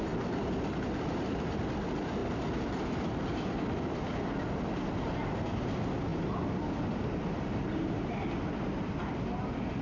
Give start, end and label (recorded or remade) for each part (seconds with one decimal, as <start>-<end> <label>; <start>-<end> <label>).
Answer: 0.0-9.8 recorded